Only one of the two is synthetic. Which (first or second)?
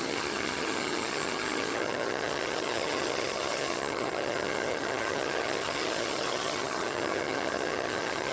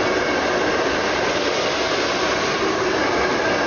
first